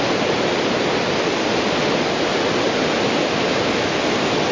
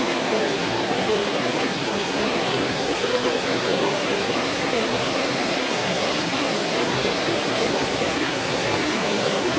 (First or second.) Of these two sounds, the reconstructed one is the second